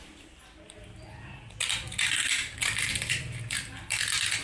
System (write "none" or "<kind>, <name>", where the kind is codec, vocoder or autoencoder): none